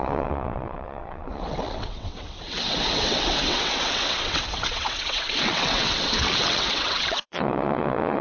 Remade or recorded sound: remade